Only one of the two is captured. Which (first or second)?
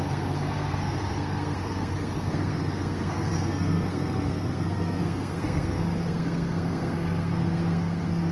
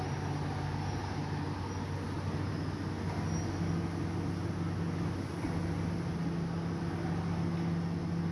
second